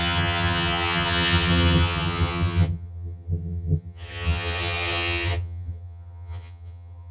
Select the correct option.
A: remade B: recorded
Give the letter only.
A